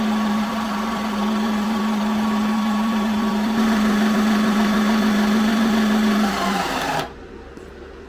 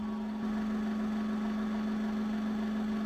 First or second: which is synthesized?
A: first